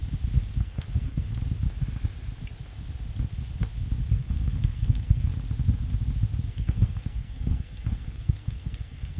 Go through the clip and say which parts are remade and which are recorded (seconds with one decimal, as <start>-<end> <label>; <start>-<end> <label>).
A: 0.0-0.6 recorded; 0.6-1.3 remade; 1.3-4.1 recorded; 4.1-5.3 remade; 5.3-6.5 recorded; 6.5-9.2 remade